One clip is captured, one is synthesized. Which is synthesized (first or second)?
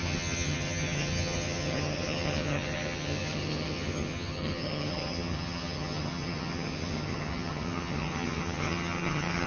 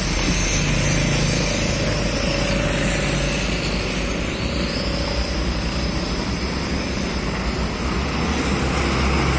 first